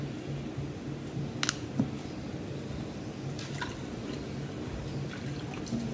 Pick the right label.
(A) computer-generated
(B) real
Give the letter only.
B